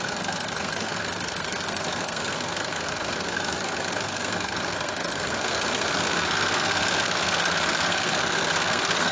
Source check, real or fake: fake